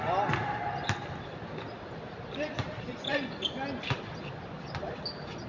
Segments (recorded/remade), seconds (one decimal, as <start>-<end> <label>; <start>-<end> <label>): 0.0-5.5 recorded